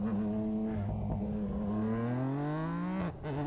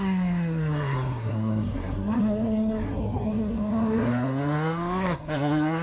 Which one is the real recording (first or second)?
first